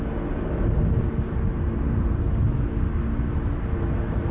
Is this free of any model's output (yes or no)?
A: yes